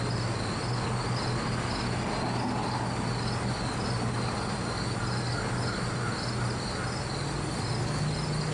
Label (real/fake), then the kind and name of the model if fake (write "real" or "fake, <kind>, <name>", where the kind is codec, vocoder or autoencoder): real